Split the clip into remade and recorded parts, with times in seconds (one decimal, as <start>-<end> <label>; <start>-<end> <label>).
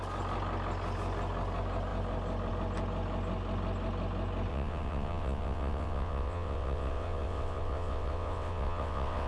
0.0-4.5 recorded; 4.5-9.3 remade